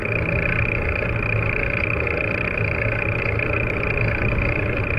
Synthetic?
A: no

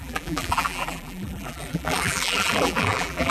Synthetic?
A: yes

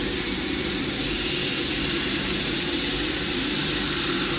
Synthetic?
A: yes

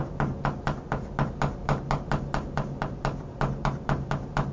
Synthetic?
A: no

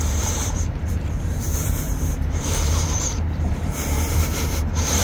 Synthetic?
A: yes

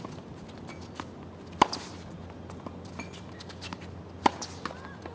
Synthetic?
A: no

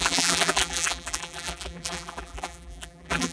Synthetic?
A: yes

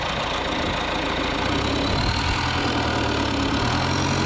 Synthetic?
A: no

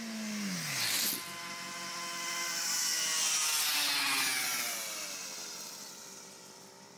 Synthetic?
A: no